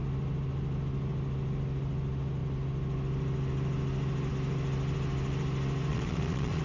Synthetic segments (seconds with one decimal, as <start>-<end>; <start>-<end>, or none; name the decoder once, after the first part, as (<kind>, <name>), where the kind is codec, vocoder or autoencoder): 5.9-6.6 (vocoder, Vocos)